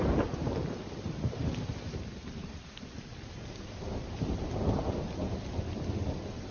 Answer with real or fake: real